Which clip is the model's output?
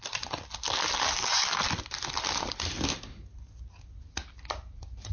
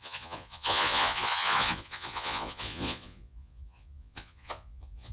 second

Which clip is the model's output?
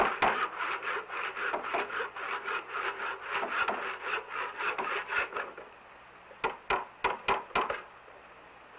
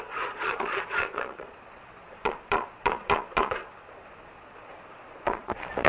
second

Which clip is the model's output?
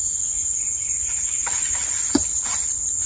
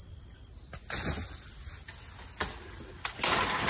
first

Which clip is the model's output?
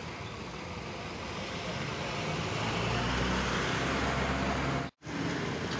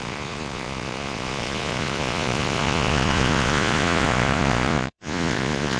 second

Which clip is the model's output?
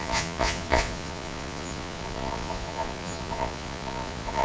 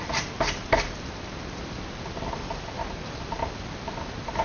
first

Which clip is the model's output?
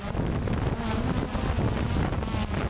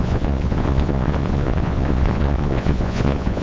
second